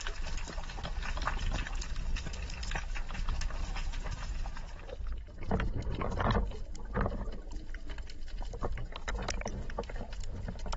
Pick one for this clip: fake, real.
real